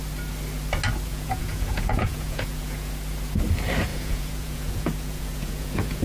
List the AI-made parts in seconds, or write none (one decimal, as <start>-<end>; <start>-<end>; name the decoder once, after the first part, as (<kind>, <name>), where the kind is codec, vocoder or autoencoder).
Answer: 1.1-2.9 (vocoder, Vocos); 3.9-6.0